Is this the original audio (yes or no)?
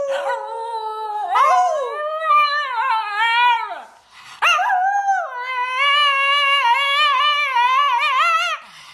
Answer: yes